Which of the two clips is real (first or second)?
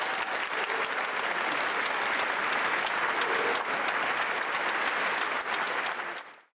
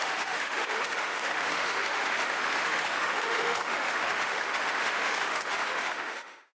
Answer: first